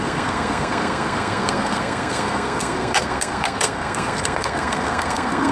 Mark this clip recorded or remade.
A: remade